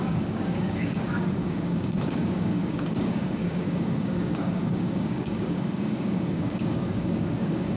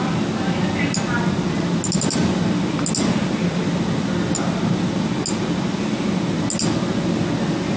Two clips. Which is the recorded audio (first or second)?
second